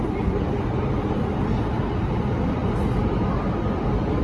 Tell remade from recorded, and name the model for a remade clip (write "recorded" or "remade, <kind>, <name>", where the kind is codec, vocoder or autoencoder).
recorded